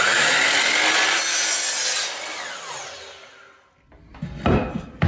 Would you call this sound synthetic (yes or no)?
no